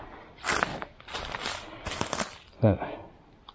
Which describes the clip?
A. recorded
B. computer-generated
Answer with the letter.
A